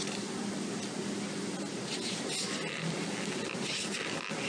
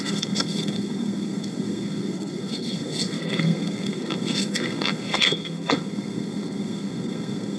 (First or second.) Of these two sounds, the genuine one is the first